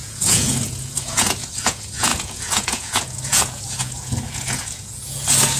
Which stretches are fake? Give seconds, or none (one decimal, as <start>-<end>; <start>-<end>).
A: 0.0-5.6